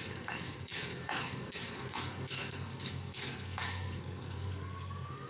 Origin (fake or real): fake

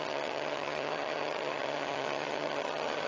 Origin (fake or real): fake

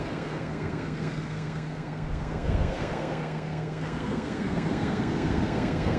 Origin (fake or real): fake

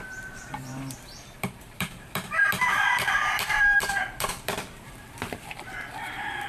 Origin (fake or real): fake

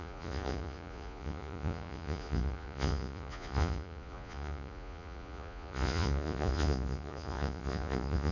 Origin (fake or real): fake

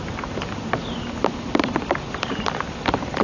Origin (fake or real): real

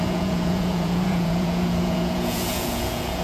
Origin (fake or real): fake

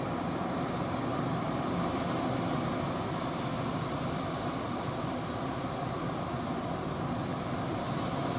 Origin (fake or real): real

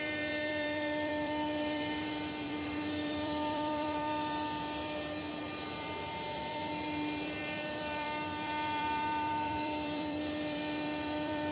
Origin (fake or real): fake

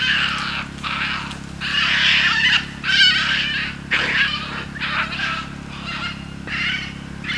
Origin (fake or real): real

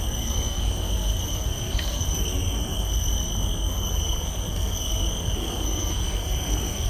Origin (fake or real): fake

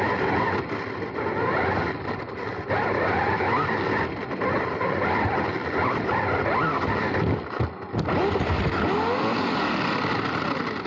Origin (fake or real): real